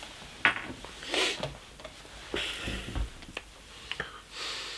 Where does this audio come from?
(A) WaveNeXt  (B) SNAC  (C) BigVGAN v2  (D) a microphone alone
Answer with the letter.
D